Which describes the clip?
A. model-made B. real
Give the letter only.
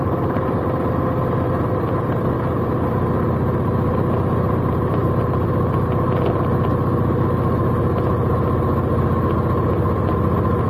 B